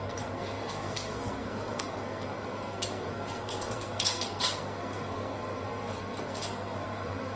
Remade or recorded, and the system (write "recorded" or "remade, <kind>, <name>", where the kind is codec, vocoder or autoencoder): remade, codec, SNAC